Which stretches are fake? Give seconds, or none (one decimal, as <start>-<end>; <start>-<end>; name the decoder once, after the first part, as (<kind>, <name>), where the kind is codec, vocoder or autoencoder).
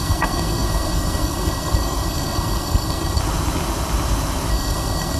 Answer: 0.0-3.2 (codec, SNAC); 4.5-5.2